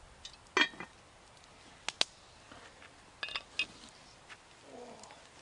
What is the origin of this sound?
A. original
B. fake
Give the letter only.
A